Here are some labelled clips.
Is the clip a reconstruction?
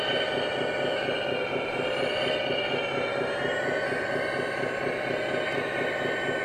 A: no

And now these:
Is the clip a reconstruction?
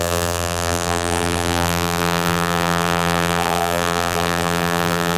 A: yes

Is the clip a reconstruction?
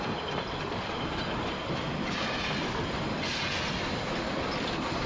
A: no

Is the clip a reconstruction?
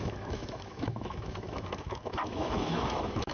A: yes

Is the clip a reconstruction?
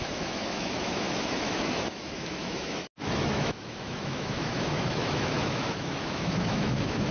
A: yes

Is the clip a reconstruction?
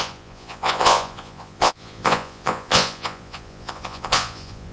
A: yes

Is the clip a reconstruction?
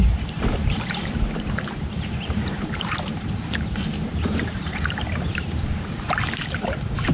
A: yes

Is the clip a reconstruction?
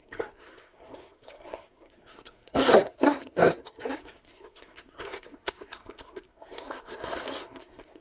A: yes